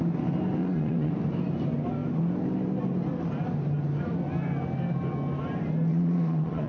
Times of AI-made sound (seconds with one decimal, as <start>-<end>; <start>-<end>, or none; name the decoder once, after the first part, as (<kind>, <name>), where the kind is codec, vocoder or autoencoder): 0.6-1.1 (vocoder, Vocos); 5.9-6.7